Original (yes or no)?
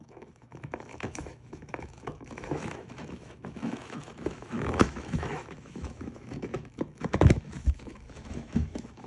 no